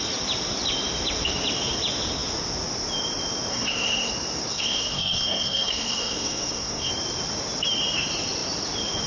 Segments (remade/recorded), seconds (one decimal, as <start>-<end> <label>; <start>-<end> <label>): 0.0-3.5 recorded; 3.5-4.1 remade; 4.1-4.5 recorded; 4.5-6.9 remade; 6.9-9.1 recorded